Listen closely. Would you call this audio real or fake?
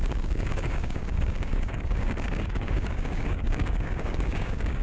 fake